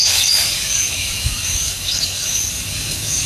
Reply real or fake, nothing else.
fake